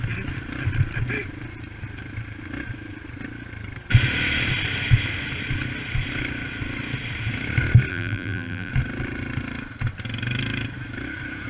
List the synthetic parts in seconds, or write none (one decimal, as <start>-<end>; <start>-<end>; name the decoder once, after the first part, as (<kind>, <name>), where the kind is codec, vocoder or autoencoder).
7.9-8.7 (vocoder, BigVGAN v2)